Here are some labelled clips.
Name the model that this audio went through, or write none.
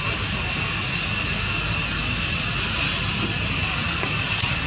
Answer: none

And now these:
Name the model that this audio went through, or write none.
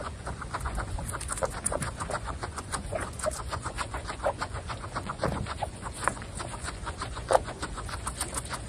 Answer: vocoder, Vocos